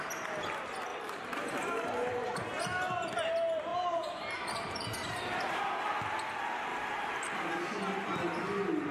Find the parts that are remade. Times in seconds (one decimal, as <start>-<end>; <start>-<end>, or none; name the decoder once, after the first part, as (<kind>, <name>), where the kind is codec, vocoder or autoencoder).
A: 0.9-1.7 (vocoder, BigVGAN v2); 3.7-5.6; 6.7-7.5